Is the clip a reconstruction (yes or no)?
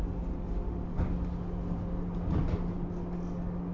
no